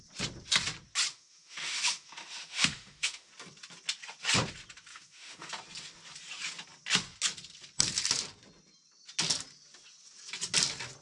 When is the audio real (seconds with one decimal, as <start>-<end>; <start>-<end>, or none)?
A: 0.0-1.1; 3.3-4.9; 5.5-11.0

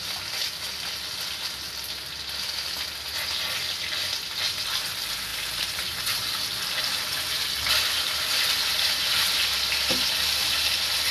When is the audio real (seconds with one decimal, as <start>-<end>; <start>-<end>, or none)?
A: 0.0-11.1